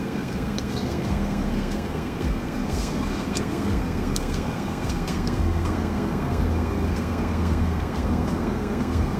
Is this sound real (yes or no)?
no